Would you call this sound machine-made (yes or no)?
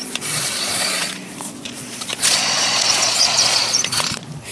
yes